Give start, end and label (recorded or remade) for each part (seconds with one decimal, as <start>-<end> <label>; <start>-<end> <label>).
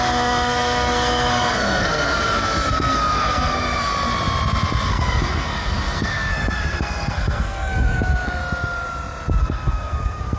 0.0-3.9 remade; 3.9-4.9 recorded; 4.9-8.4 remade; 8.4-9.4 recorded; 9.4-10.4 remade